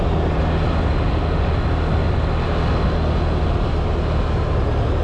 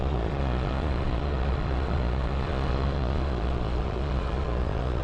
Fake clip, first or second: second